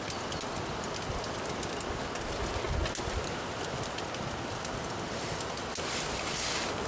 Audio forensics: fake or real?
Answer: real